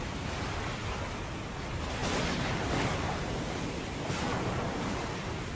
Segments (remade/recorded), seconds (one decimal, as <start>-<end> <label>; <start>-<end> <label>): 0.0-2.0 recorded; 2.0-5.6 remade